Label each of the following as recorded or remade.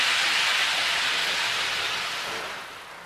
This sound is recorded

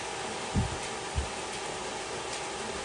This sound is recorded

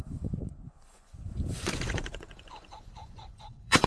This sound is remade